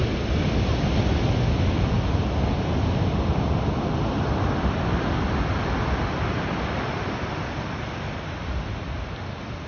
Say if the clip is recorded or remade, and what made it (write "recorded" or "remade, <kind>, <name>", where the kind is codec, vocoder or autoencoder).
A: recorded